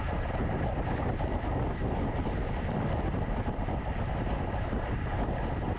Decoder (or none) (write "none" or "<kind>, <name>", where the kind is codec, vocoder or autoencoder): none